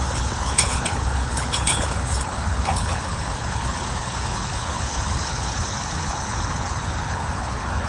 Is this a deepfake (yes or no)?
yes